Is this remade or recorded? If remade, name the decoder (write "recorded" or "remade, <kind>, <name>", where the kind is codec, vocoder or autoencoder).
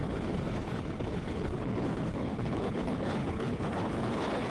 remade, codec, HILCodec